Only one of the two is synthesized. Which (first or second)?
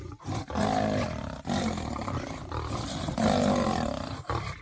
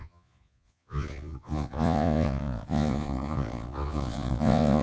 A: second